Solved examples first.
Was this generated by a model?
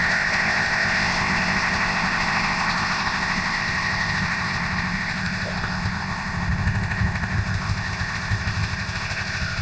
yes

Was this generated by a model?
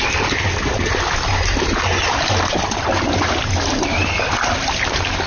no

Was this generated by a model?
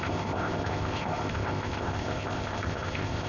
yes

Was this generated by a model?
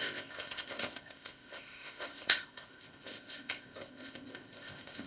yes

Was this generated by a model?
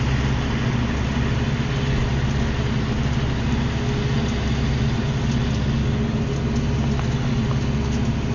no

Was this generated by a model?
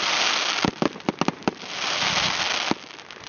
no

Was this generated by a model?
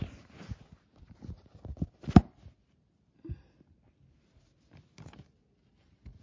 no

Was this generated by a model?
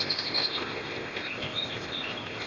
yes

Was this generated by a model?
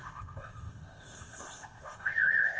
yes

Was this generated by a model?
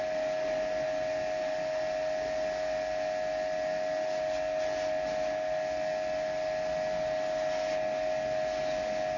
no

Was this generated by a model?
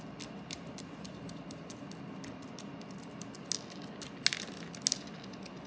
no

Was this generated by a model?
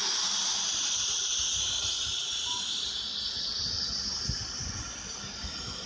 no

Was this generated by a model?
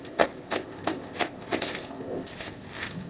yes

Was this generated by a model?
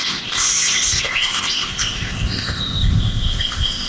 yes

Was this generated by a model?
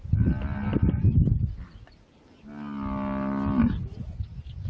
no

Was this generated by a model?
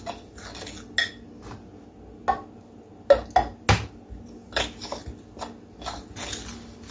no